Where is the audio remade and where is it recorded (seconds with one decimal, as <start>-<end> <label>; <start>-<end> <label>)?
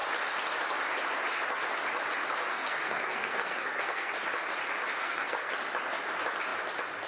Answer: 0.0-2.5 recorded; 2.5-4.1 remade; 4.1-5.0 recorded; 5.0-5.5 remade; 5.5-7.1 recorded